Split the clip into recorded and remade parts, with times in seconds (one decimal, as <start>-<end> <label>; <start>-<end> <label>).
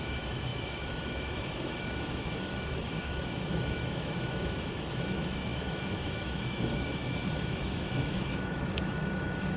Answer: 0.0-9.6 remade